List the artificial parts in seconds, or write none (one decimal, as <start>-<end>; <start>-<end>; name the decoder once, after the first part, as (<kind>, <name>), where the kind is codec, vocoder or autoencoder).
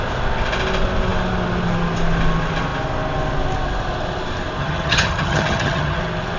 4.6-6.0 (vocoder, HiFi-GAN)